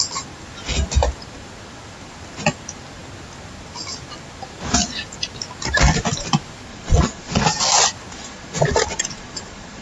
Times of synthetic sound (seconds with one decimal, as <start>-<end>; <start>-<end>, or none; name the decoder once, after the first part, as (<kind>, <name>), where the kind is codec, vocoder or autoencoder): 6.7-7.4 (vocoder, Vocos); 8.1-9.8